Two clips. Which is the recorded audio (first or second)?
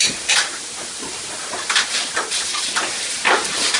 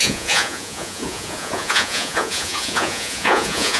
first